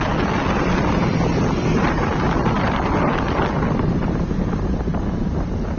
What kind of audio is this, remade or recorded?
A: recorded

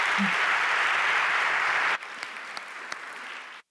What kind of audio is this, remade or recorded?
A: remade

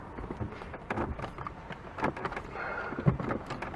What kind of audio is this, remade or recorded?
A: recorded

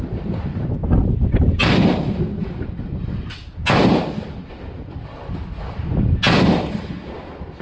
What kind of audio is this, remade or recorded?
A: recorded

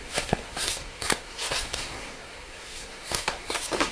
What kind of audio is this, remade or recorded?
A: remade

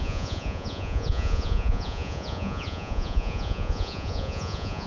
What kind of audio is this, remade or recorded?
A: remade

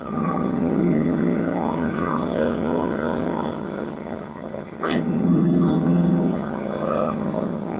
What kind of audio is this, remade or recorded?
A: remade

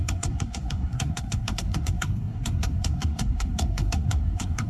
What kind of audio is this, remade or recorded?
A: remade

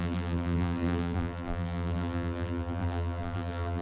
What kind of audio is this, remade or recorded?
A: remade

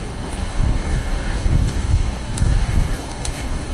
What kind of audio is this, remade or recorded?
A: remade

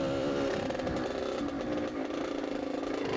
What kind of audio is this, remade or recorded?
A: recorded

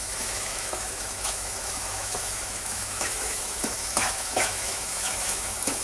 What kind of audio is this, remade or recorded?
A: remade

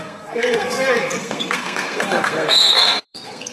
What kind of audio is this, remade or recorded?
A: remade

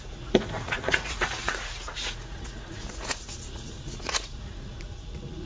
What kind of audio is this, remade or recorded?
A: remade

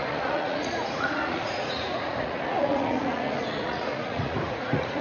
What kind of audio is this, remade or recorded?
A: remade